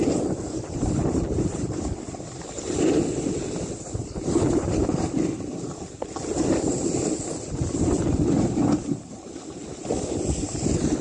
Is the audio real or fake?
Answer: real